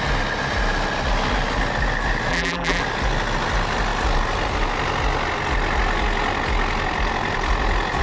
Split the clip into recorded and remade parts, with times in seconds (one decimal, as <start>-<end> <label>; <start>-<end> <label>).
0.0-2.3 recorded; 2.3-2.8 remade; 2.8-8.0 recorded